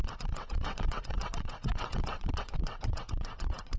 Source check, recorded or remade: remade